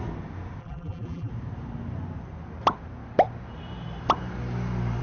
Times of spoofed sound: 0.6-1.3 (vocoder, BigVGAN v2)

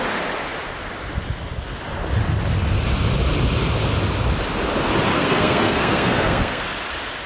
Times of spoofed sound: 5.1-6.6 (codec, SNAC)

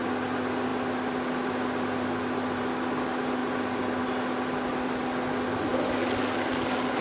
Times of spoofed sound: 0.0-7.0 (vocoder, BigVGAN v2)

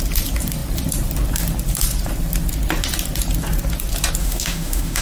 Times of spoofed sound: 4.2-5.0 (autoencoder, DAC-VAE)

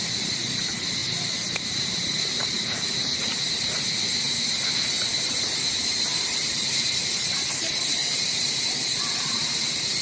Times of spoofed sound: none

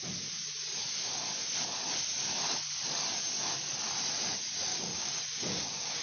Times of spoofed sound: 4.7-5.2 (codec, DAC)

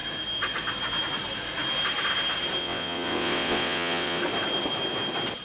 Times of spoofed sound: 2.6-4.2 (vocoder, WaveNeXt)

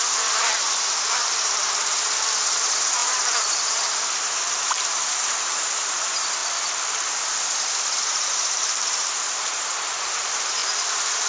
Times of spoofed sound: 0.0-6.4 (vocoder, BigVGAN v2); 8.1-10.6